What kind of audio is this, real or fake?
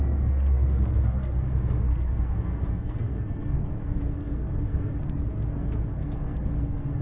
fake